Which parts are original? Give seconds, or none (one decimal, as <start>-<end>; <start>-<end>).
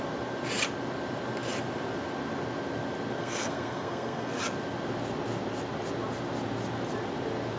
0.0-3.2; 4.3-7.6